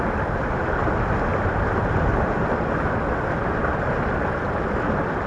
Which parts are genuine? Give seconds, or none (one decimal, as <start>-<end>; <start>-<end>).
0.0-5.3